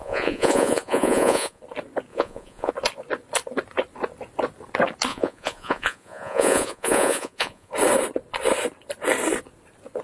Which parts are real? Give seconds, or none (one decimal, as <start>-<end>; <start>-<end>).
1.6-2.1; 2.7-5.1; 7.7-10.0